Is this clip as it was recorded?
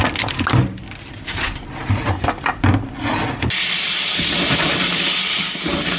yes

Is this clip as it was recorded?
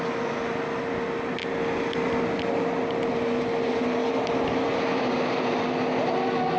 yes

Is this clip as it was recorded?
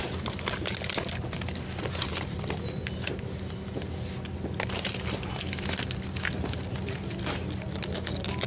yes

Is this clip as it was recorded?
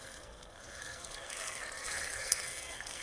no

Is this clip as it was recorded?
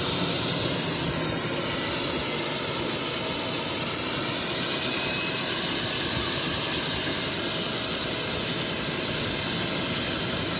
yes